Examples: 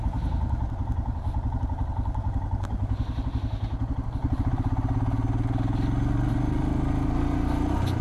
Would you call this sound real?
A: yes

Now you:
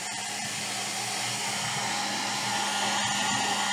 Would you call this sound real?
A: yes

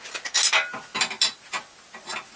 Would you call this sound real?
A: yes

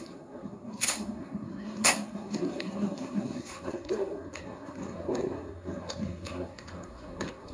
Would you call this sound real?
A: no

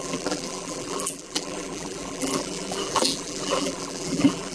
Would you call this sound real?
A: no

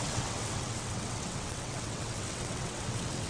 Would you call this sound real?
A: no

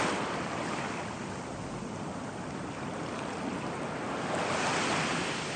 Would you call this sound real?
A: yes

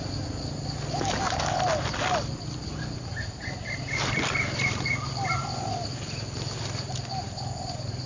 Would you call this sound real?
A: yes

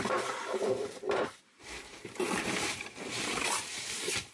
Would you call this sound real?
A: no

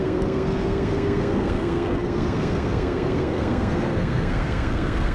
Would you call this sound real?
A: no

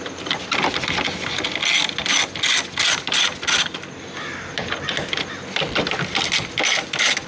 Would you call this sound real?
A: yes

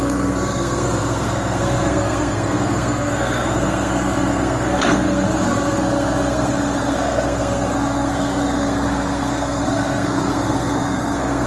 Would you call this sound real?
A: no